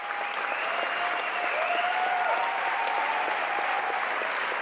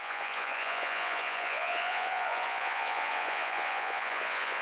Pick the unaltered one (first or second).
first